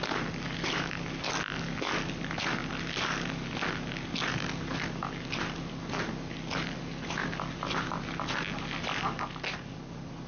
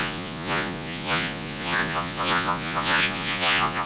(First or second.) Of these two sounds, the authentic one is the first